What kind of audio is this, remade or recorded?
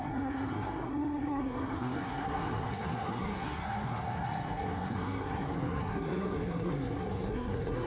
remade